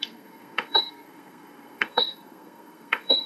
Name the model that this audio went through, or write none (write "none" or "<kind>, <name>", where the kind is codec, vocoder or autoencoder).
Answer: codec, SNAC